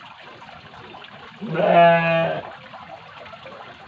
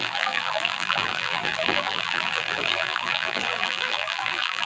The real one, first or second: first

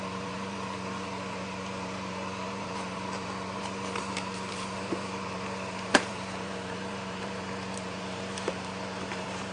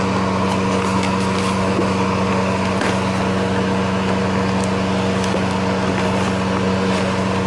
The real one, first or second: second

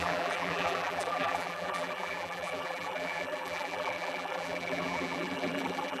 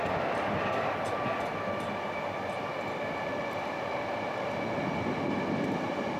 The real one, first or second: second